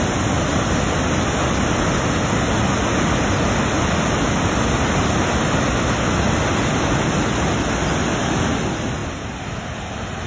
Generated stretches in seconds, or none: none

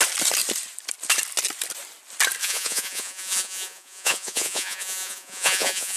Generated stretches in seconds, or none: 2.4-6.0 (vocoder, Vocos)

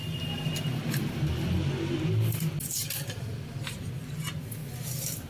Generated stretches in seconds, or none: none

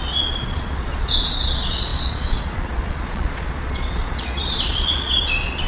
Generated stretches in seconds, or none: 0.0-5.7 (vocoder, Vocos)

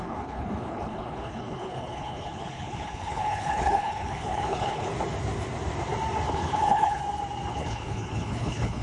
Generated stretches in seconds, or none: 0.0-4.9 (codec, HILCodec); 6.3-7.0; 7.5-8.8

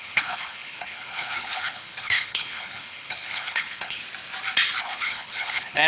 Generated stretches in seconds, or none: 0.0-4.0 (codec, HILCodec); 4.8-5.9

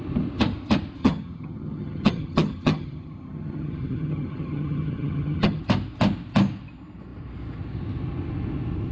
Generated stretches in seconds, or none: 1.0-5.6 (vocoder, HiFi-GAN)

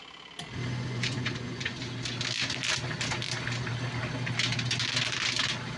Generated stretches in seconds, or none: 0.7-1.8 (vocoder, Vocos)